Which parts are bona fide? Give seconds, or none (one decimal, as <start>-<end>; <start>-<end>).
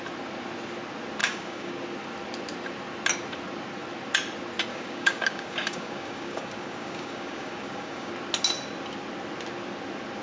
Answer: 0.0-1.2; 1.7-4.7; 8.1-10.2